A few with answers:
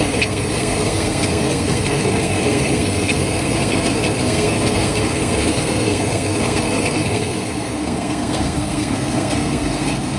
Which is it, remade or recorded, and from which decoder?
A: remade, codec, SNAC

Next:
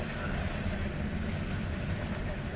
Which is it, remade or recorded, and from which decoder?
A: recorded